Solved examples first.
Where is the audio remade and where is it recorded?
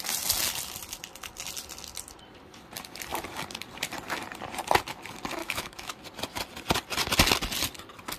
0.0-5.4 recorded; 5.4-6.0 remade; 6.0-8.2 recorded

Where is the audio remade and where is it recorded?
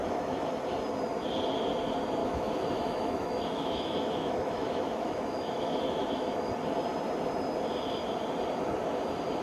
0.0-0.5 remade; 0.5-2.2 recorded; 2.2-6.5 remade; 6.5-9.4 recorded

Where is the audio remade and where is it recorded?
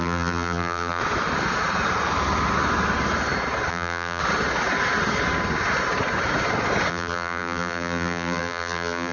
0.0-1.0 remade; 1.0-3.7 recorded; 3.7-4.2 remade; 4.2-6.9 recorded; 6.9-9.1 remade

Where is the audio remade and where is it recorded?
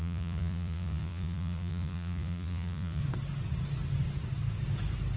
0.0-3.0 remade; 3.0-5.2 recorded